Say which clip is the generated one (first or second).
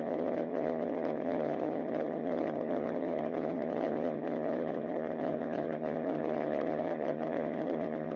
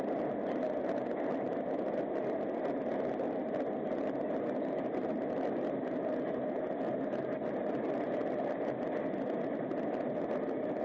first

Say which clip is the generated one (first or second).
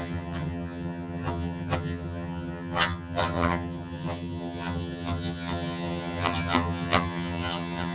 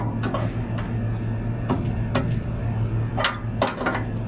first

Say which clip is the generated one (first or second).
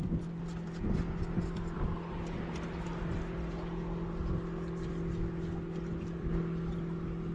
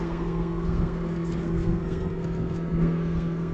second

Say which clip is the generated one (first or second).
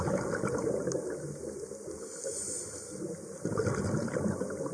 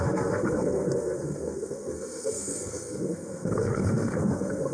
second